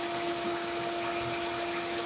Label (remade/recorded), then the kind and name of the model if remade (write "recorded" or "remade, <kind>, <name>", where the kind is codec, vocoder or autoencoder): recorded